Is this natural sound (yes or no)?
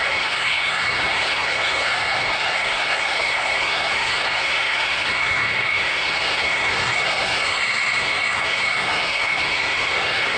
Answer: no